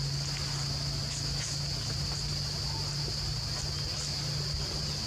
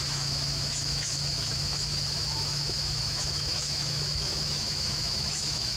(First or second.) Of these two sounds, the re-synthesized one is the second